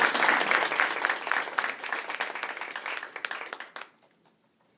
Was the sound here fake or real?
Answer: real